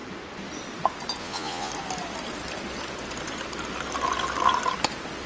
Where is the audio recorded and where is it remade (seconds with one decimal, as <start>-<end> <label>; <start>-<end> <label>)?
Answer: 0.0-1.2 recorded; 1.2-1.7 remade; 1.7-5.3 recorded